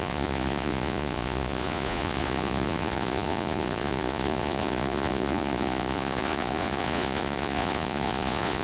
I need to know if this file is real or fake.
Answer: fake